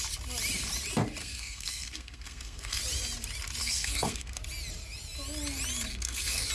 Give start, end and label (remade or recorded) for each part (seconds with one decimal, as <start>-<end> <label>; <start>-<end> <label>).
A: 0.0-1.2 recorded; 1.2-2.8 remade; 2.8-3.6 recorded; 3.6-4.4 remade; 4.4-5.9 recorded; 5.9-6.5 remade